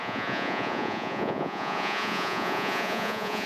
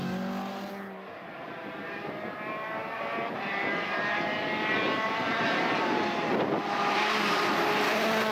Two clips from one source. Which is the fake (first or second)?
first